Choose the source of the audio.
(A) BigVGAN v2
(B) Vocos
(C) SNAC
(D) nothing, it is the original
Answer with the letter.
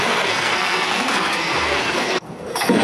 C